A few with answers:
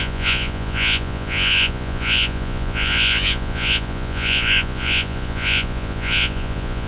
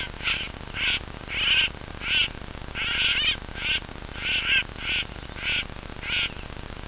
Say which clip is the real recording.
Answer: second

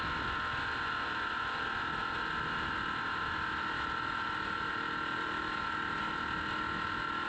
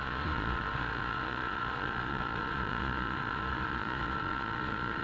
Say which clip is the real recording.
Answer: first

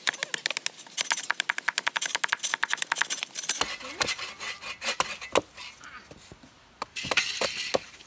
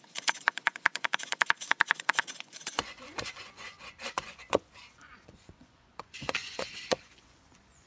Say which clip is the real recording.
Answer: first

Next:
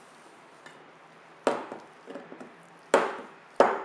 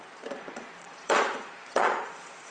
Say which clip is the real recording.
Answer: first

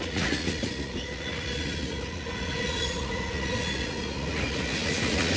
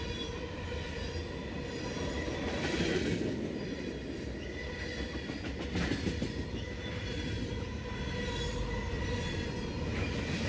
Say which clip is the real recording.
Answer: second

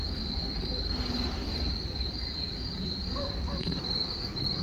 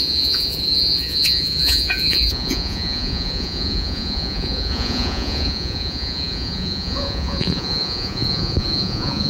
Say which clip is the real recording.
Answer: first